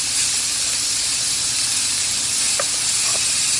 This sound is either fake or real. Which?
real